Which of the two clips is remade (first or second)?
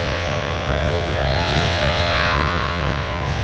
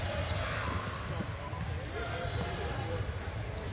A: first